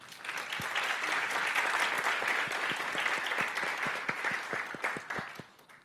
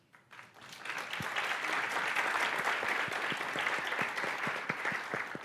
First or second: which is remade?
second